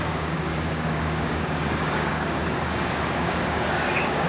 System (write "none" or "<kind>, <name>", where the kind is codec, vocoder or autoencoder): codec, DAC